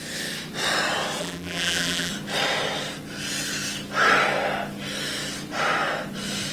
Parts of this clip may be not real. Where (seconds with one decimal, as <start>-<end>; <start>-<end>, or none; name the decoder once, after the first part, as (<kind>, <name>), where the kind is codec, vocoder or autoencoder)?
1.2-2.1 (vocoder, BigVGAN v2)